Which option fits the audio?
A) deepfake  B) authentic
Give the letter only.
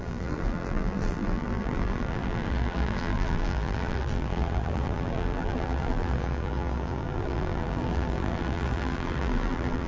A